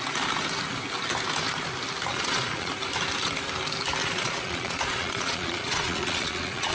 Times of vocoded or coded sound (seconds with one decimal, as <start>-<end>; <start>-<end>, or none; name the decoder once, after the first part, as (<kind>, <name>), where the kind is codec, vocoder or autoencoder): 2.1-2.7 (vocoder, Vocos); 4.0-6.7